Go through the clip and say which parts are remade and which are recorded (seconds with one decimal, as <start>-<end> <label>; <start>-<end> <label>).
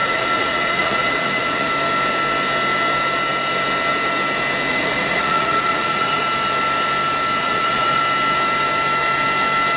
0.0-1.7 remade; 1.7-4.7 recorded; 4.7-6.2 remade; 6.2-7.4 recorded; 7.4-8.0 remade; 8.0-9.8 recorded